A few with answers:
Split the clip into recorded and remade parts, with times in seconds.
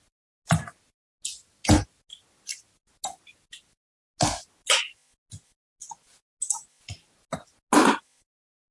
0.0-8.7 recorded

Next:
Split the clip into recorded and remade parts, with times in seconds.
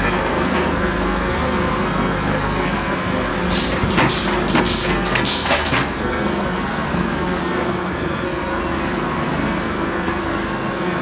0.0-3.3 remade; 3.3-4.6 recorded; 4.6-11.0 remade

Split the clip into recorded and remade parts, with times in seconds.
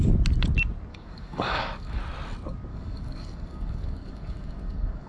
0.0-0.9 recorded; 0.9-2.0 remade; 2.0-2.7 recorded; 2.7-5.1 remade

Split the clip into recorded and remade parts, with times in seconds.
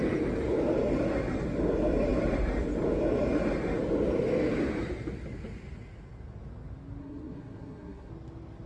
0.0-7.0 recorded; 7.0-8.1 remade; 8.1-8.7 recorded